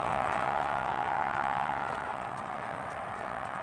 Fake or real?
fake